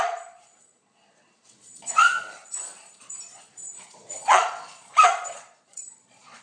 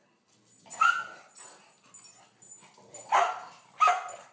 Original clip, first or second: second